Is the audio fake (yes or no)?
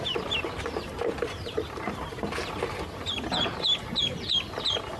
no